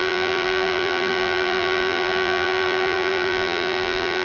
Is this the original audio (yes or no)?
no